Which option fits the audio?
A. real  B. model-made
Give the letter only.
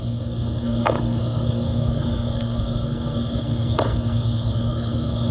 B